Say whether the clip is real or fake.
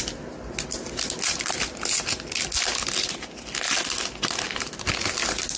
real